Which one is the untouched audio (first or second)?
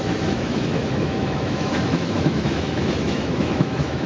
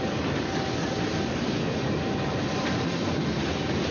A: second